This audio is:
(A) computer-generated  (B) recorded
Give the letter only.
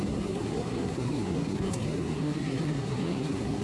A